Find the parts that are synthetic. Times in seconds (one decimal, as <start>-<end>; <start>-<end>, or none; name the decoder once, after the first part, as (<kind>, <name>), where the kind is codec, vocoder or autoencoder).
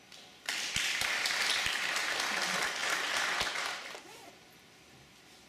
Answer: none